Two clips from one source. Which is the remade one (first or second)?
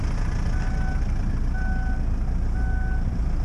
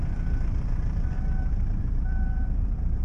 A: second